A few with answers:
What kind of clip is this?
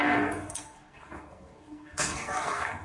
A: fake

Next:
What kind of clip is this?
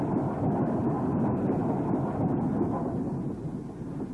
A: real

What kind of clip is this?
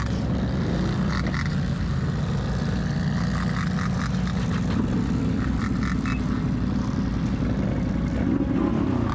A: real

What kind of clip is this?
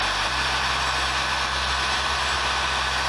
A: real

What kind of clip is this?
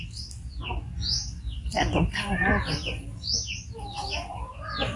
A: real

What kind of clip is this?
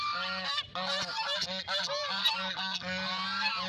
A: real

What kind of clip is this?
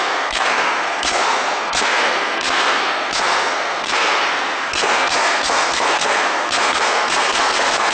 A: fake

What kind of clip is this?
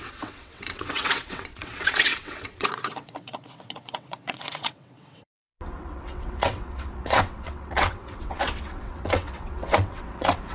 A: fake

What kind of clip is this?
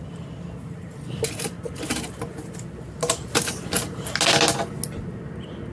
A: real